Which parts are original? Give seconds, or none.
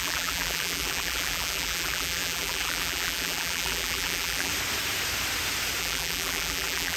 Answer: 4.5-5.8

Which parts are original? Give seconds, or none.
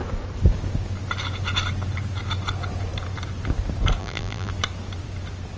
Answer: 0.0-4.0; 4.5-5.6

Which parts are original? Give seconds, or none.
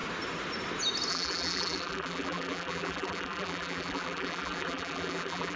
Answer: 0.0-1.1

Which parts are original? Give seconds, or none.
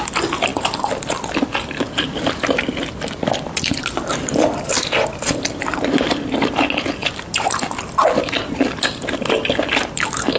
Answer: 0.0-0.5; 4.7-10.4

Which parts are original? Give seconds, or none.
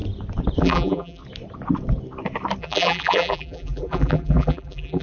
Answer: 0.0-0.6; 1.2-2.6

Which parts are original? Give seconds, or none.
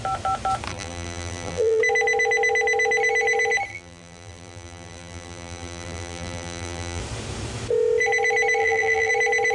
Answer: 0.0-0.7; 1.8-3.7; 7.0-8.6; 9.1-9.5